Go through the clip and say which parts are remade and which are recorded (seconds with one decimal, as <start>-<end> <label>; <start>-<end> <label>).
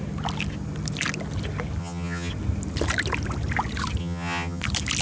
0.0-1.8 recorded; 1.8-2.3 remade; 2.3-4.0 recorded; 4.0-4.6 remade; 4.6-5.0 recorded